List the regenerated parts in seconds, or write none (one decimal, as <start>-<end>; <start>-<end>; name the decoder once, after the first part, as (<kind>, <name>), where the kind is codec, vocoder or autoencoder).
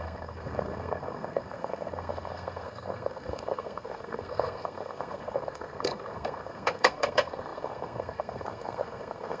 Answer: 0.0-9.4 (codec, SNAC)